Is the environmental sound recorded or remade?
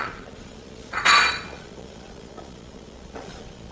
remade